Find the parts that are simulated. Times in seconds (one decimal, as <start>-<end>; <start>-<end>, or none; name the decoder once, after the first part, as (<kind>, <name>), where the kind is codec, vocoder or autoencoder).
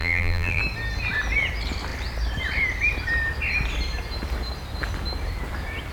0.0-0.6 (vocoder, BigVGAN v2)